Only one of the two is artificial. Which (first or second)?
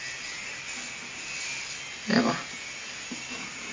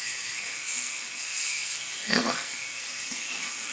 second